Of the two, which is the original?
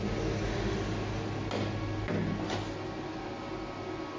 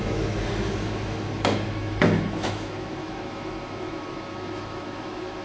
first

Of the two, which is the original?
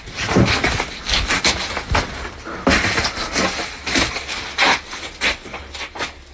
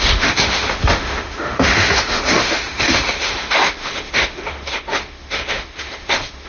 first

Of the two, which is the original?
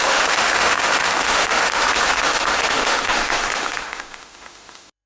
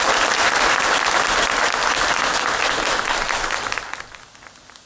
second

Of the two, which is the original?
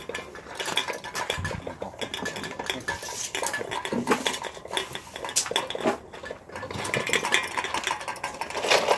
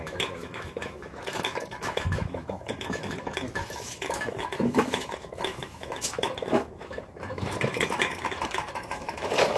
first